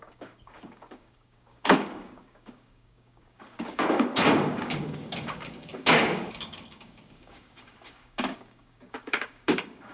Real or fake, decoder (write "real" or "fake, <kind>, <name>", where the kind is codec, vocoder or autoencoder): fake, codec, DAC